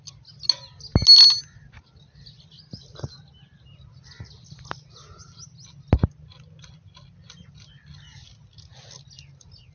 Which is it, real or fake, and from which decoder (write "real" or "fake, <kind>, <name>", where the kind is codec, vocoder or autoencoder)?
real